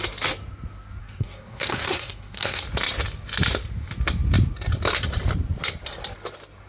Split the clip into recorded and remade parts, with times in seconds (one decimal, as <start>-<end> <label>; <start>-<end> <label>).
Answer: 0.0-1.0 recorded; 1.0-2.6 remade; 2.6-6.7 recorded